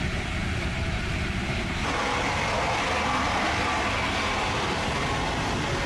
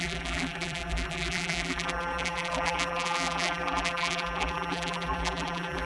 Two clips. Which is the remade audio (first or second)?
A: second